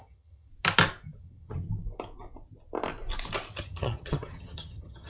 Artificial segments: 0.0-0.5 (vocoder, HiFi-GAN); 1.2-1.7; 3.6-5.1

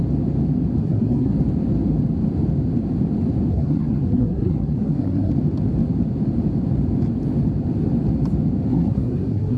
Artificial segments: 0.8-1.3 (codec, SNAC); 3.5-5.3; 8.7-9.6